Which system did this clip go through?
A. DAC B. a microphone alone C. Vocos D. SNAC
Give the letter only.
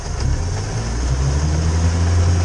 B